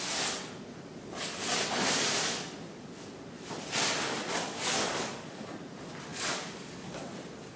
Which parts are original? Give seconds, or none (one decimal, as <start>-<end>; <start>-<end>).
0.0-4.5; 5.4-6.1; 7.0-7.6